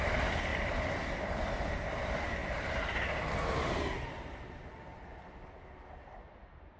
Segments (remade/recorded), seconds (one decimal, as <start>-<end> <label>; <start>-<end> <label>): 0.0-0.5 recorded; 0.5-1.2 remade; 1.2-2.4 recorded; 2.4-4.5 remade; 4.5-6.8 recorded